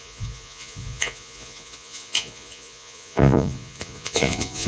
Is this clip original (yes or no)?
no